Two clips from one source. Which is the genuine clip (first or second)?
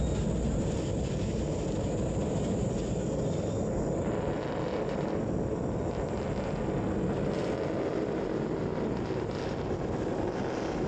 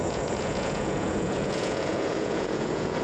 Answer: first